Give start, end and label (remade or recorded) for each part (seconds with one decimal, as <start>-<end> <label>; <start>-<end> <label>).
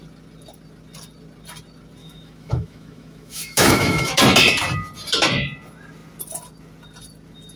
0.0-2.0 recorded; 2.0-4.2 remade; 4.2-7.6 recorded